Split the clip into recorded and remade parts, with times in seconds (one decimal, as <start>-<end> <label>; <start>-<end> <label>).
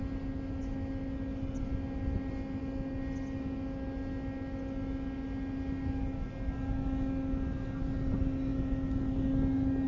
0.0-9.9 recorded